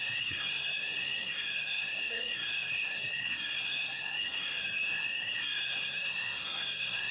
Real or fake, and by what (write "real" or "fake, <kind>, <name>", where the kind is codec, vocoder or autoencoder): fake, codec, SNAC